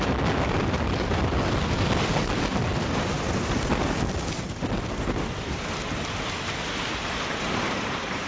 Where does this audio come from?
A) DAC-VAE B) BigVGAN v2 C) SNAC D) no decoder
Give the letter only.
D